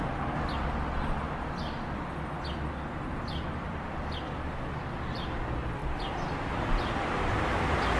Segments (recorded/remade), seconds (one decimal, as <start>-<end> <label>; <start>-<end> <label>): 0.0-5.8 recorded; 5.8-6.5 remade; 6.5-8.0 recorded